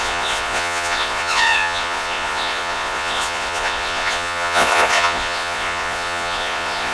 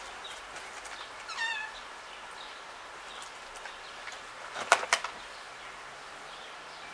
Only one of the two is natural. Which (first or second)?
second